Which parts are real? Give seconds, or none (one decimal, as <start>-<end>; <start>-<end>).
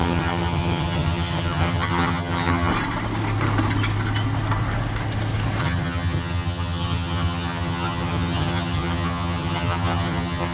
2.7-5.6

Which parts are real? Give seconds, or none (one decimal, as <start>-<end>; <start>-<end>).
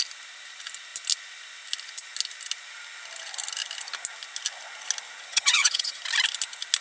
0.0-5.3; 6.0-6.8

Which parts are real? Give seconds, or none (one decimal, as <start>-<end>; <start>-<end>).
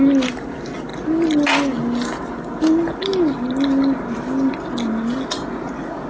0.0-6.1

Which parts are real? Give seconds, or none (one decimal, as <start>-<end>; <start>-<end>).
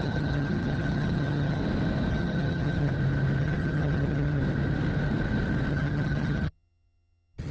1.6-2.1; 2.9-3.4; 4.4-5.7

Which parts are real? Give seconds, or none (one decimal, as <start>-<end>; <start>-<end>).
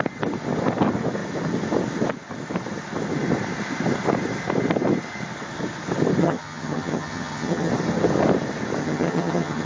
0.0-6.2; 7.7-8.8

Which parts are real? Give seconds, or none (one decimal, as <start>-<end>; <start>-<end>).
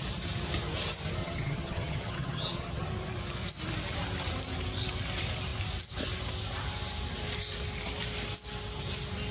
0.0-1.2; 2.9-9.3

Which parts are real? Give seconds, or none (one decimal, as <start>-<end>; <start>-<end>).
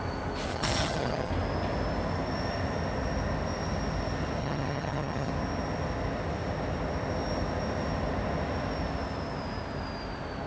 0.0-0.5; 1.3-4.4; 5.3-10.5